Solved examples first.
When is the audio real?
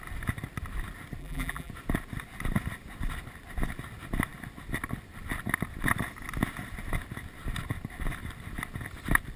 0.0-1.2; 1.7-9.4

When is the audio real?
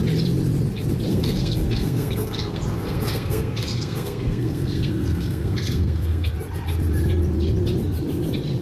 0.0-1.1; 6.3-8.6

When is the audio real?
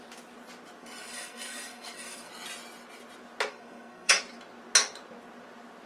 0.0-0.8; 2.3-3.5; 4.2-5.9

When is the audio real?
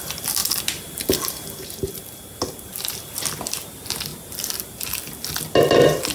0.0-6.1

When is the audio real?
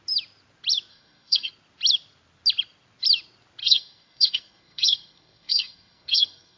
0.0-0.9; 1.5-3.6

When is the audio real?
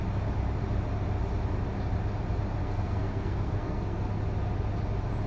0.0-2.6; 4.2-5.3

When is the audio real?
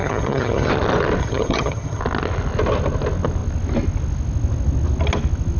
0.7-1.2; 2.0-5.6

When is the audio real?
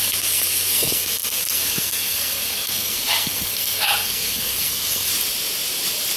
5.1-6.2